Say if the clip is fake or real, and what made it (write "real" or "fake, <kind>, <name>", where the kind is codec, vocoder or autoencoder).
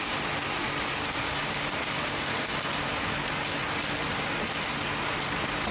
real